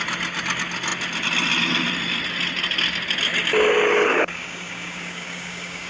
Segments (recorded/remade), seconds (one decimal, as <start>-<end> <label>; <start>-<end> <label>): 0.0-4.1 recorded; 4.1-5.9 remade